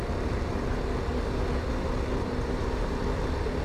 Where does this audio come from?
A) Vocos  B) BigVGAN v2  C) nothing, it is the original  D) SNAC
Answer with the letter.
C